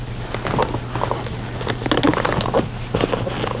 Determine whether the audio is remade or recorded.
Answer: recorded